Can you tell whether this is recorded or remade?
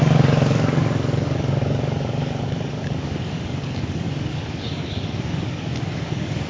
remade